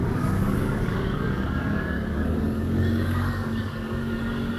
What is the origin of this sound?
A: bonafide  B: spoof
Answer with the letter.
B